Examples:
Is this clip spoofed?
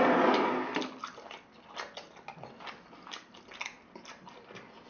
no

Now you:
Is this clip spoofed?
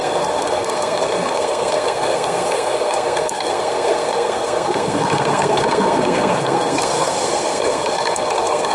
yes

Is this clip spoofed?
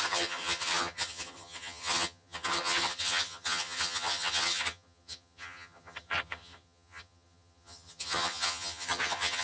yes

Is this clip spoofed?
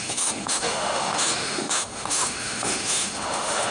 yes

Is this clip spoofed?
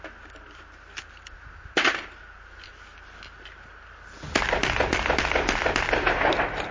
no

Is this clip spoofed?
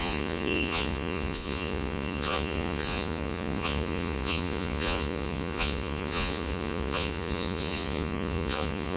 yes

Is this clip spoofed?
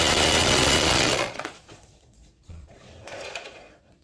yes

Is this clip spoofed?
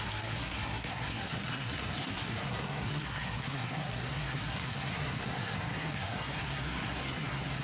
yes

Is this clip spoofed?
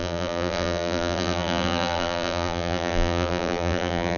yes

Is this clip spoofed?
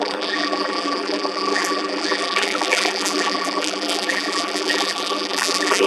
yes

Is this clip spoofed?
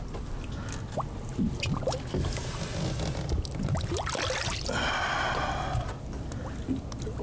no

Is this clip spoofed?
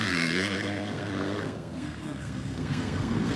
yes